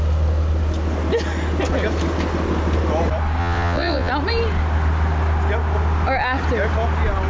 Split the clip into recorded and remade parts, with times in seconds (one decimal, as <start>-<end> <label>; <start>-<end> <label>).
0.0-3.4 recorded; 3.4-4.1 remade; 4.1-7.3 recorded